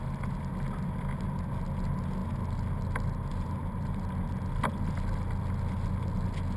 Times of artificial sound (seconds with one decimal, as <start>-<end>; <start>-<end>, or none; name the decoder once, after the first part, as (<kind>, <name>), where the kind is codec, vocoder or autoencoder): none

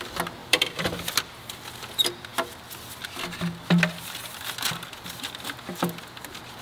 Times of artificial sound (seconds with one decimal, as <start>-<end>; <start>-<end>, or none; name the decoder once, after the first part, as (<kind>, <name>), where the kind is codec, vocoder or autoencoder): 0.4-1.8 (vocoder, BigVGAN v2)

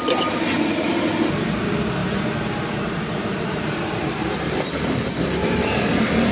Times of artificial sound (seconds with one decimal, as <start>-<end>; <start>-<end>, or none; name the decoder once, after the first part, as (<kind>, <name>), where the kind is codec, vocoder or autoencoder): 2.0-5.8 (vocoder, BigVGAN v2)

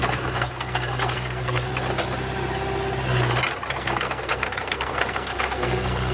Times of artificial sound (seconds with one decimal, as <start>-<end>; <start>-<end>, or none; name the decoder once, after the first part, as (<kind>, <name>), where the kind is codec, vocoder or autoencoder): 0.0-1.7 (codec, SNAC); 3.7-6.1

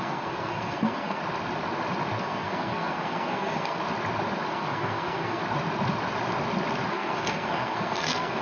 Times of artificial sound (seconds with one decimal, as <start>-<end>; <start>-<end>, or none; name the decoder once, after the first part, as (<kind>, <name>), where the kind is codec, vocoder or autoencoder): 0.0-1.2 (codec, SNAC); 2.2-3.8; 4.5-5.4; 6.9-8.4

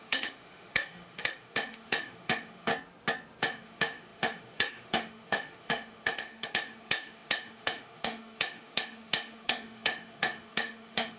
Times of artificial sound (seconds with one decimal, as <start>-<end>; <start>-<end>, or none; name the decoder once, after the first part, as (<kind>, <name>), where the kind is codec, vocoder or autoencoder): 0.0-2.7 (autoencoder, DAC-VAE); 3.4-11.2

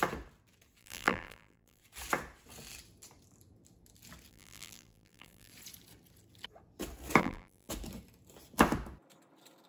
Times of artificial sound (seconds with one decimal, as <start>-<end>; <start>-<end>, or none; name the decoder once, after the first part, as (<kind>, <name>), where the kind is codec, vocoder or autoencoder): 0.8-1.8 (vocoder, BigVGAN v2); 4.3-5.5; 7.2-7.7

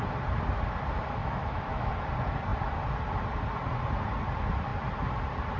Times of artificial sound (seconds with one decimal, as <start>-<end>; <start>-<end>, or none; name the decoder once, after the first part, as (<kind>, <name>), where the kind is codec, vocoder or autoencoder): 1.2-1.9 (autoencoder, DAC-VAE)